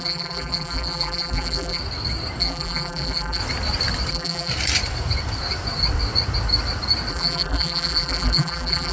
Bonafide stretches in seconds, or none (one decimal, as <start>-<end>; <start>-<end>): 1.8-2.4; 3.4-4.1; 4.5-7.1